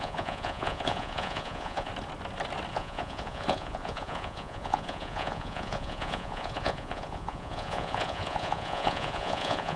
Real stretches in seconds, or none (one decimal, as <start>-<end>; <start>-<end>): 1.9-2.7